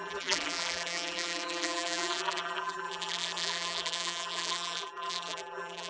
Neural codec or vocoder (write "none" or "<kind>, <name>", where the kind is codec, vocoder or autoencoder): vocoder, BigVGAN v2